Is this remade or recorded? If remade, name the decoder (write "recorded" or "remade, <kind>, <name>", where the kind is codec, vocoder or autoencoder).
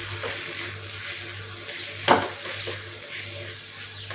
recorded